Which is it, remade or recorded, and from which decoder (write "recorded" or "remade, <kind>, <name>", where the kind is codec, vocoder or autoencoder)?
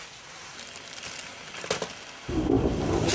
recorded